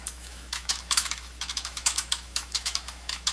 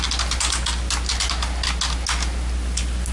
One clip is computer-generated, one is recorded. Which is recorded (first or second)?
second